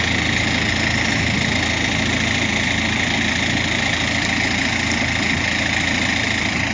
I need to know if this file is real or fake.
real